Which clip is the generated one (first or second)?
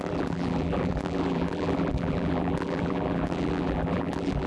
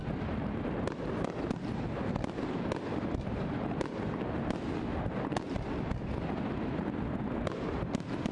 first